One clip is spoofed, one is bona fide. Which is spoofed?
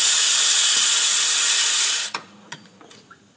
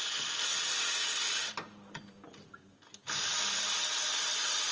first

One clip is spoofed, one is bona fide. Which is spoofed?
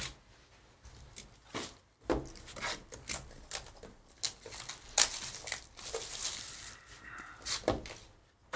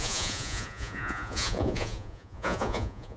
second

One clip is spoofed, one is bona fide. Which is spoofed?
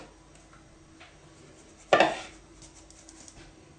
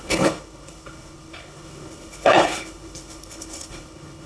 second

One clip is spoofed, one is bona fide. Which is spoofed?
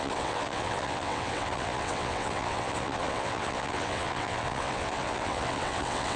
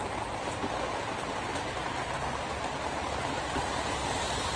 first